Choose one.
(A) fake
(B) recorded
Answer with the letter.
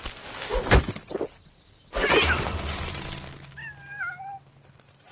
B